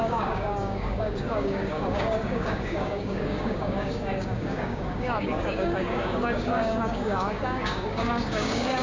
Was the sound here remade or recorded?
remade